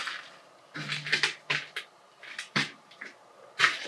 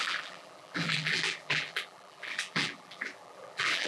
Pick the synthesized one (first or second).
second